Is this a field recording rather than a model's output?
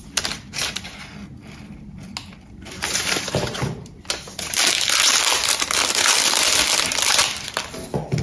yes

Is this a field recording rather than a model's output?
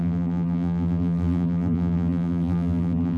no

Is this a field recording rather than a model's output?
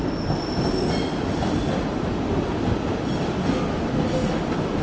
yes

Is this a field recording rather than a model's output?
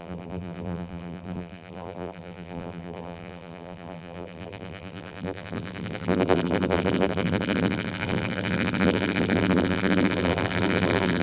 no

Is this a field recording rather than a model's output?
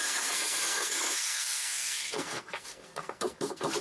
no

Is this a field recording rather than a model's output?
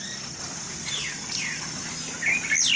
yes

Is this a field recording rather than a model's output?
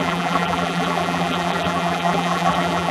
no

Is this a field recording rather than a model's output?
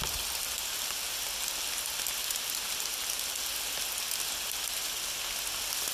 yes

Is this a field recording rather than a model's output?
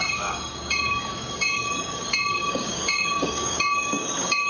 no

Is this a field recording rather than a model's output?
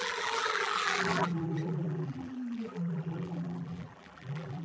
no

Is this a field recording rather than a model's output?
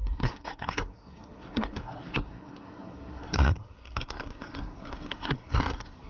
no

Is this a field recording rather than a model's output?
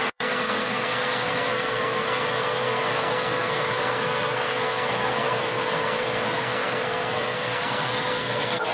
no